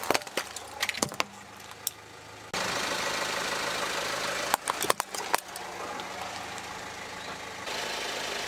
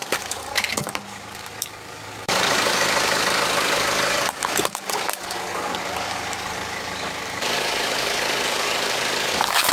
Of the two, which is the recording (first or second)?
first